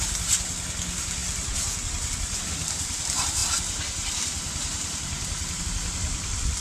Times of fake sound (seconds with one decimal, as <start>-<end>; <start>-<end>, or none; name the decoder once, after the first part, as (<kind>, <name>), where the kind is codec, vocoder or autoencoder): none